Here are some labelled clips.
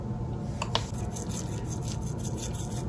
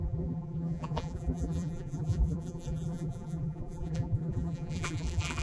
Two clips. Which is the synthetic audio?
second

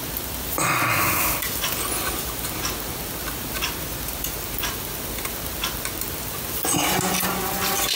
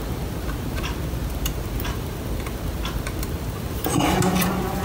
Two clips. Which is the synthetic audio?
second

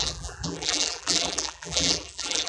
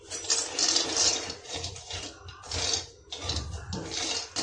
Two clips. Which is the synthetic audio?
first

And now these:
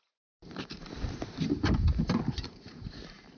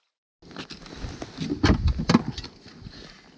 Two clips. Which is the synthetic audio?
first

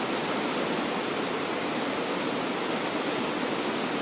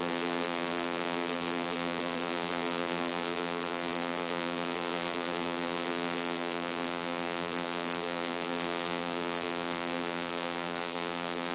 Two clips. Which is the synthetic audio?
second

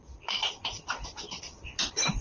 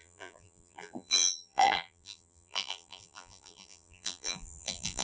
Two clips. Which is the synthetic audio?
second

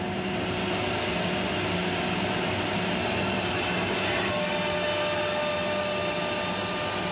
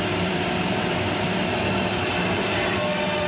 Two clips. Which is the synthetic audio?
second